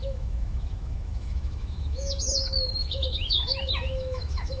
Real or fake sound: fake